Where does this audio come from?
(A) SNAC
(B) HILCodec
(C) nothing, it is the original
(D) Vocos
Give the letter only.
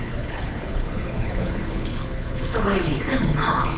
B